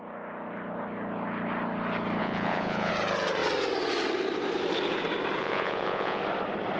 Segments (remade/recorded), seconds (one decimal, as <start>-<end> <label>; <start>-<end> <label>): 0.0-2.2 recorded; 2.2-2.9 remade; 2.9-5.4 recorded; 5.4-6.2 remade; 6.2-6.8 recorded